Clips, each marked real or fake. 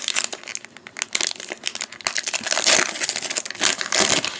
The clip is real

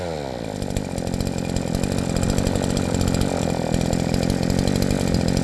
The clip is real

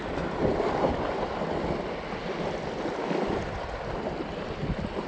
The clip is real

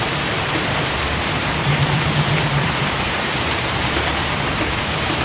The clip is fake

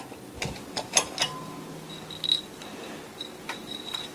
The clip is real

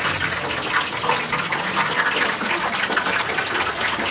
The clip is real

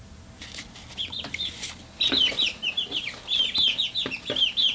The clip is real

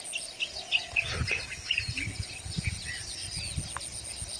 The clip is real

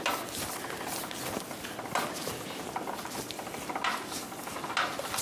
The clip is real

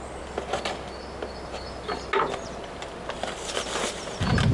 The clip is real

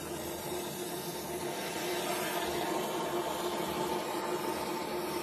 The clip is real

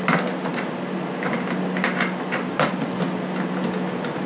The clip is real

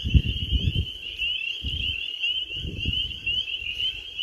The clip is real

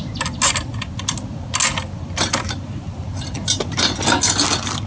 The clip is real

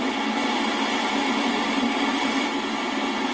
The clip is real